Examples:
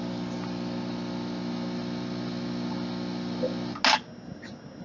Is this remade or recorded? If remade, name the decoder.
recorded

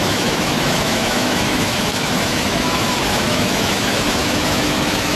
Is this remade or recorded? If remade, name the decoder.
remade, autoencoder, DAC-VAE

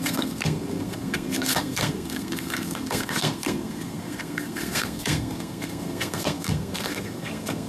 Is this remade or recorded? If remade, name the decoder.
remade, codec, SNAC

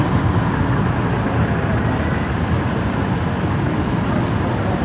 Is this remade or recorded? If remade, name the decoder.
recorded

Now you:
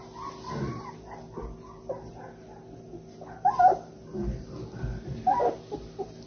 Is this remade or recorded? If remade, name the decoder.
recorded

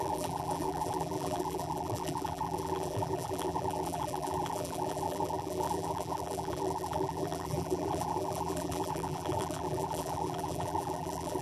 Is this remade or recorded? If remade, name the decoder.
remade, vocoder, BigVGAN v2